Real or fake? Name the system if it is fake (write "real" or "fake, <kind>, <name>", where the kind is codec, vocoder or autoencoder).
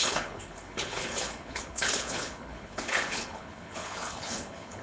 fake, codec, HILCodec